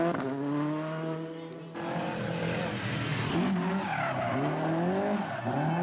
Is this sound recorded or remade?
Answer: recorded